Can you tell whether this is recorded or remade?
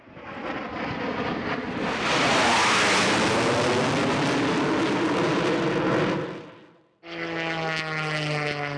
recorded